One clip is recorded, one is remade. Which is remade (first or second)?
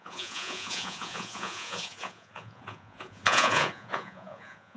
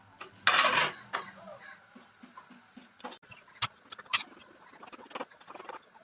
first